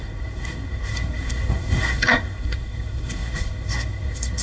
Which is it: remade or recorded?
remade